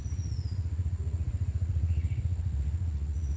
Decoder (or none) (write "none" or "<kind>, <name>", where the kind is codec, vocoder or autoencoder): vocoder, Vocos